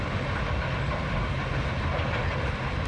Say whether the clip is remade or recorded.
recorded